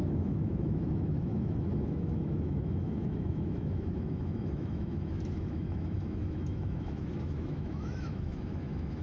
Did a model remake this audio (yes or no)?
yes